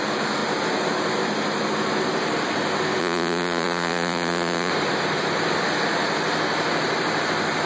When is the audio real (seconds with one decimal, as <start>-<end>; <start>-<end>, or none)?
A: 0.0-3.0; 4.7-7.7